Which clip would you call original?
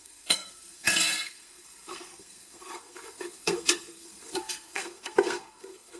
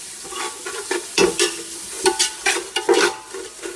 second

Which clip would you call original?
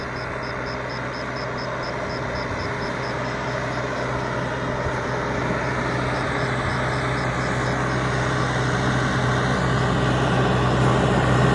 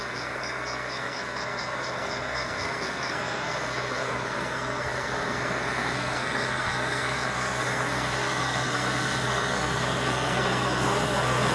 first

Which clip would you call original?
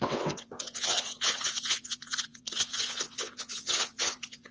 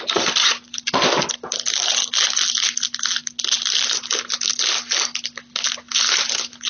second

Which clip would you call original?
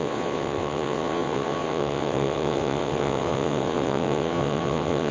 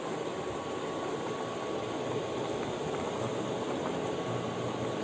second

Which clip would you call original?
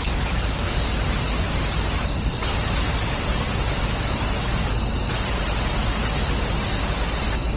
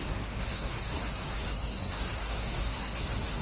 first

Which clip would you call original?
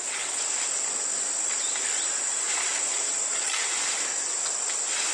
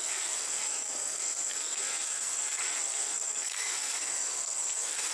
first